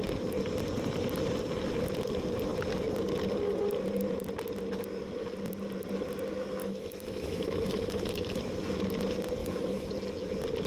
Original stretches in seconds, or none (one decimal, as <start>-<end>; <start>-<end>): 0.0-6.6; 8.4-9.4; 9.9-10.7